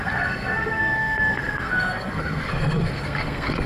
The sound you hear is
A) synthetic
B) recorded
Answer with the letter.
A